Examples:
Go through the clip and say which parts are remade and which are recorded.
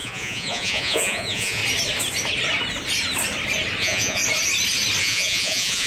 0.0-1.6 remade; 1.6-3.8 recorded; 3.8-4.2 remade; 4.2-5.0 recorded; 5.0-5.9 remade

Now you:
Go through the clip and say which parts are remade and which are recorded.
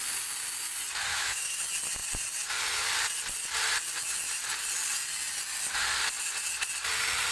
0.0-1.1 recorded; 1.1-1.6 remade; 1.6-7.3 recorded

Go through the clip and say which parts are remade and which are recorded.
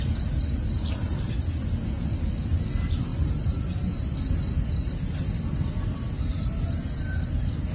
0.0-7.7 recorded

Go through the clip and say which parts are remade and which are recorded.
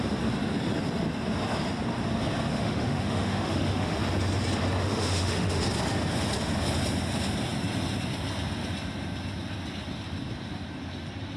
0.0-2.5 recorded; 2.5-4.0 remade; 4.0-4.8 recorded; 4.8-5.6 remade; 5.6-11.4 recorded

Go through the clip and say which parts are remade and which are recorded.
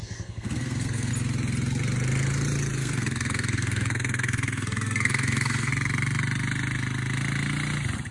0.0-1.1 remade; 1.1-2.8 recorded; 2.8-5.7 remade; 5.7-8.1 recorded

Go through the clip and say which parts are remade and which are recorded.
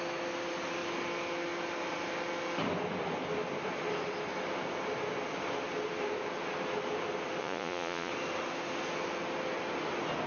0.0-7.4 recorded; 7.4-8.1 remade; 8.1-10.3 recorded